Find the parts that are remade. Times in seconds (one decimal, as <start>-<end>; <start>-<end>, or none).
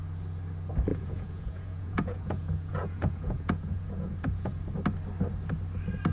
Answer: 0.9-4.6